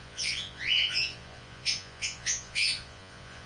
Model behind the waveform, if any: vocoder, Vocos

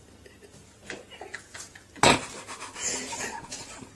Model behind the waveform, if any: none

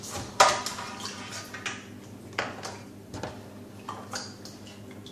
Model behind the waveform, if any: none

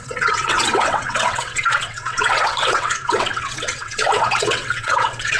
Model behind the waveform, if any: vocoder, WaveNeXt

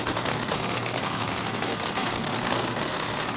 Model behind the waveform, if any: codec, SNAC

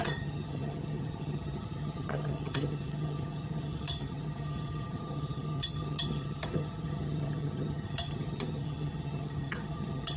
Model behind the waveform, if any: vocoder, HiFi-GAN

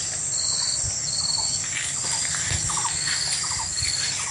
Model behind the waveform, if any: none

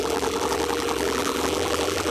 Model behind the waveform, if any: vocoder, BigVGAN v2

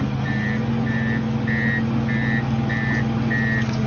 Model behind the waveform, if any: none